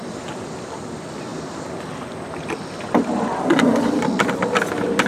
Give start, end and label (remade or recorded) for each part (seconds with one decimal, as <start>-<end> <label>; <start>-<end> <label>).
0.0-5.1 recorded